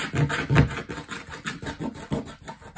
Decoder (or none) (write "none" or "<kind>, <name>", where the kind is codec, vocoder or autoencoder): none